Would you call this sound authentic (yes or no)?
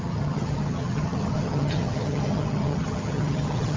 no